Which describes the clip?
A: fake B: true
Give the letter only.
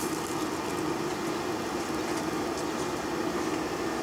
B